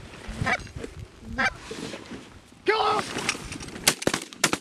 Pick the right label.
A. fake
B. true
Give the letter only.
B